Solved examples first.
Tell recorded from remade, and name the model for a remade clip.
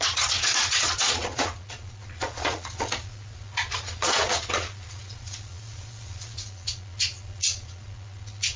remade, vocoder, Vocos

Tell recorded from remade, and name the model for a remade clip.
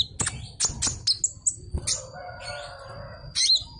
recorded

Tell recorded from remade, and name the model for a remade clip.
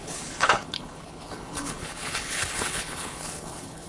remade, codec, HILCodec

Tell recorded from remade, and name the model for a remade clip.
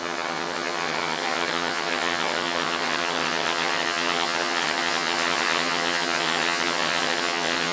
remade, vocoder, HiFi-GAN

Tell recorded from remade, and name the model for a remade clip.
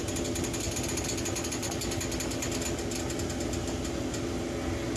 recorded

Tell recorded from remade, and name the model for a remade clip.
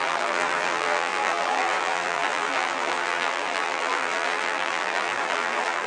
remade, vocoder, BigVGAN v2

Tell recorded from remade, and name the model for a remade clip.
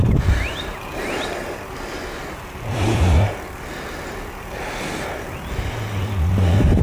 recorded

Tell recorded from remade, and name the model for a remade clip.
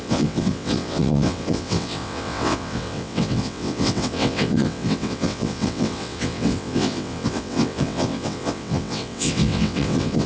remade, vocoder, WaveNeXt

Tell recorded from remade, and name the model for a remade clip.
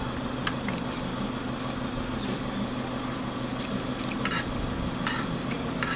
recorded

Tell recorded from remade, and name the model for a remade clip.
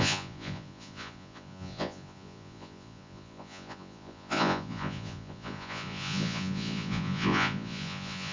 remade, vocoder, Vocos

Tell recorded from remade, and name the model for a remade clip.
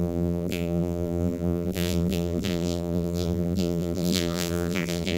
remade, vocoder, BigVGAN v2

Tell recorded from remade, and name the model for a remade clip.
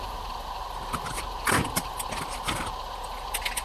recorded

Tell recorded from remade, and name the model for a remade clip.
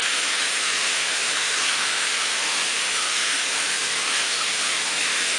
remade, autoencoder, DAC-VAE